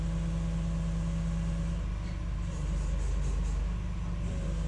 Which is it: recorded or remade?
recorded